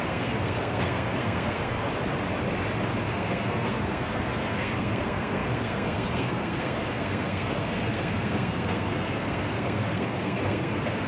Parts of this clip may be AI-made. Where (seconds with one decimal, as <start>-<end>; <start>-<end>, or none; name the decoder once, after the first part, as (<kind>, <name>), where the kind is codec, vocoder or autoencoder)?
0.0-1.9 (codec, SNAC); 3.1-11.1